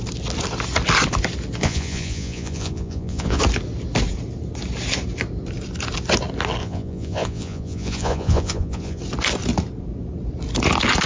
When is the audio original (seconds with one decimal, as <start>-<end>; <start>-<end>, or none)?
0.0-1.6; 3.4-6.6; 9.0-11.1